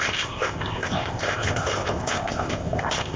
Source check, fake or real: fake